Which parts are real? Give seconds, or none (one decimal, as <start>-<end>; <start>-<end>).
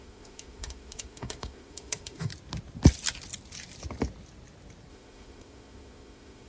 2.3-4.9